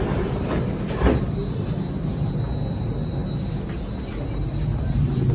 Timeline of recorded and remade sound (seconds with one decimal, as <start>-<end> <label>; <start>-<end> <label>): 0.0-1.4 remade; 1.4-2.7 recorded; 2.7-3.2 remade; 3.2-4.1 recorded; 4.1-5.3 remade